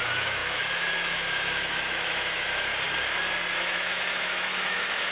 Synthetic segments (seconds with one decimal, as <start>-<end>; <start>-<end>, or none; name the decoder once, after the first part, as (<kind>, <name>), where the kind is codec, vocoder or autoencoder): 0.0-2.7 (autoencoder, DAC-VAE); 3.6-5.1